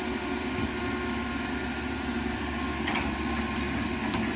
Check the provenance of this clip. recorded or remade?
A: recorded